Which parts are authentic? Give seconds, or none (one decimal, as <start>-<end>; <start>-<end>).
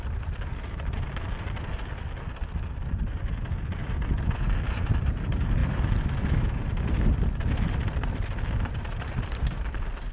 0.0-10.1